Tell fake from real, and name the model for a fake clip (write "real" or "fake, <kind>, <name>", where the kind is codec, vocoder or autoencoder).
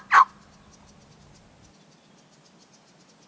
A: real